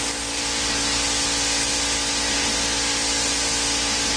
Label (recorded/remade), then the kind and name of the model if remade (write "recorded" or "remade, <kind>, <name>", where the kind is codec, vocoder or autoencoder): recorded